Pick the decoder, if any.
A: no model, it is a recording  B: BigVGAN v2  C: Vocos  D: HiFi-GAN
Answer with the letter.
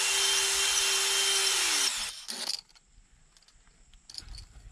A